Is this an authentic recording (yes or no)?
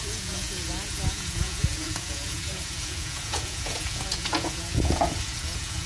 no